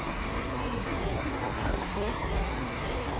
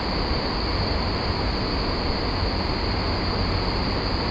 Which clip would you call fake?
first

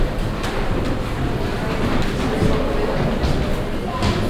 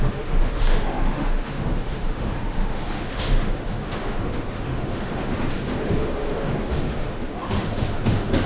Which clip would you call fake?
second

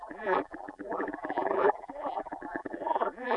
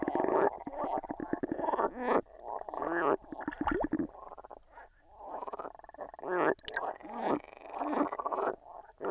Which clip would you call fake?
first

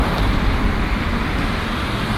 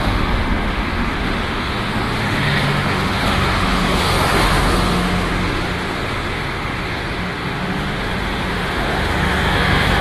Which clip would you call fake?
second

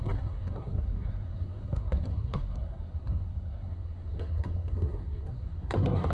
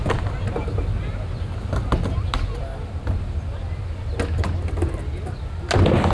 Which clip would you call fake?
first